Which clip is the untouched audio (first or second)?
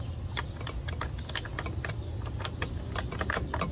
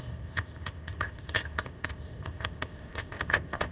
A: first